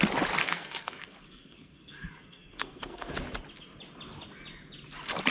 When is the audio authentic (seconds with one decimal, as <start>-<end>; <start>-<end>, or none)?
0.0-0.4; 3.1-5.3